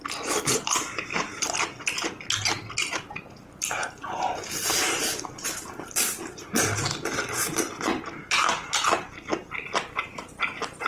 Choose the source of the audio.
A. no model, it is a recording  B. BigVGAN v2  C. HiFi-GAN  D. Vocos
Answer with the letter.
A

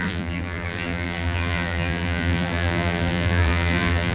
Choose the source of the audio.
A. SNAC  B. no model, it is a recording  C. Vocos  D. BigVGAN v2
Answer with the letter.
D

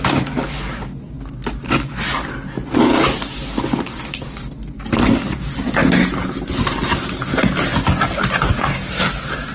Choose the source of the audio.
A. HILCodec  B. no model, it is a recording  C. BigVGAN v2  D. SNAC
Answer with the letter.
B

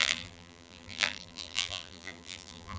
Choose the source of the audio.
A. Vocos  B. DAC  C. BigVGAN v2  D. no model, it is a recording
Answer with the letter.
C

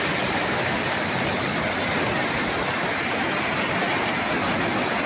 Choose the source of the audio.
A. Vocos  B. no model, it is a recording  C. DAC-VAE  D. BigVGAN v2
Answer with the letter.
B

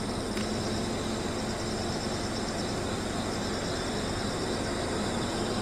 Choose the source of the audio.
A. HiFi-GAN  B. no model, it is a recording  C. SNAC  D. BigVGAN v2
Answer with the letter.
B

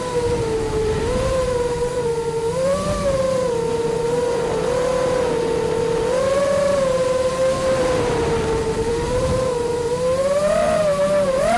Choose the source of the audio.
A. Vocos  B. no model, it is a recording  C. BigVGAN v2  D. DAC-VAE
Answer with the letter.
C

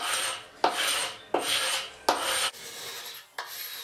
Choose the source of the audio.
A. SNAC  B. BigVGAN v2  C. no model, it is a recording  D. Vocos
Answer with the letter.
C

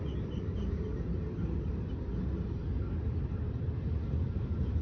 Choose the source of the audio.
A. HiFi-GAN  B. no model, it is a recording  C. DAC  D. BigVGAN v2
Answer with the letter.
B